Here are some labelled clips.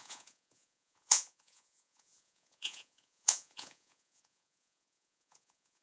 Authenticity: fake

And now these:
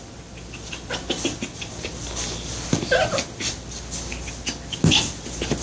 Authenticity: real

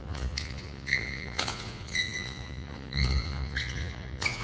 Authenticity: fake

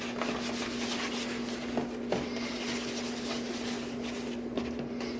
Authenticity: real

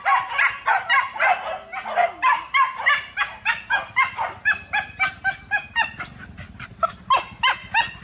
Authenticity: real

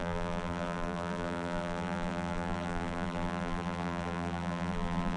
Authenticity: fake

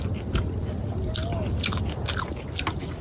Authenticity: real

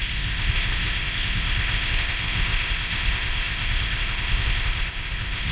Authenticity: fake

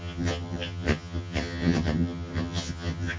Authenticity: fake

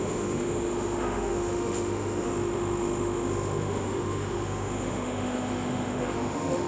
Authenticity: fake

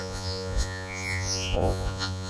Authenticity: fake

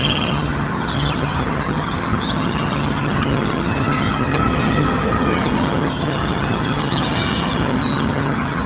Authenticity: fake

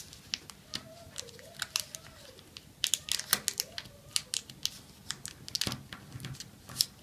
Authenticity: real